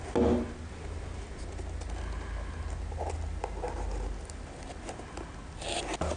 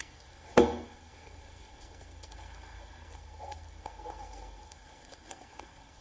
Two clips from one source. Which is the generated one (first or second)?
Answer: second